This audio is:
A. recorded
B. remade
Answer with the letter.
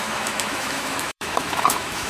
B